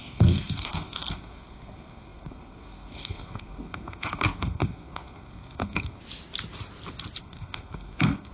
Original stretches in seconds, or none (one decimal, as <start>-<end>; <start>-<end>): 6.0-7.2